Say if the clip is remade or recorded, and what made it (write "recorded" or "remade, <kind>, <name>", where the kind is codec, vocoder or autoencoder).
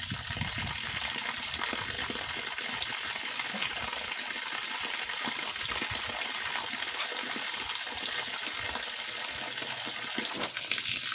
recorded